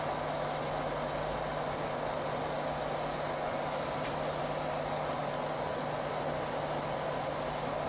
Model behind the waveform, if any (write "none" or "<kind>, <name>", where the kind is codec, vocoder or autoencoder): none